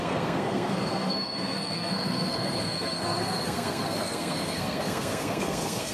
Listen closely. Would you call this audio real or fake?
fake